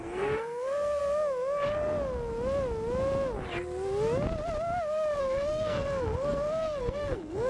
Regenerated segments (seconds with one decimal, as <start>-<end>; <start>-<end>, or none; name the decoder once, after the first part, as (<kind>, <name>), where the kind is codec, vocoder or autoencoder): 0.0-1.0 (codec, SNAC); 5.2-7.5